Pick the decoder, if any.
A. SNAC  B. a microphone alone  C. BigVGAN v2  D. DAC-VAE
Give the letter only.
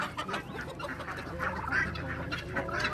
C